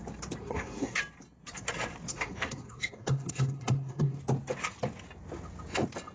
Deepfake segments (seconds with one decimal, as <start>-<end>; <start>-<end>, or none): 0.4-1.0; 2.1-4.2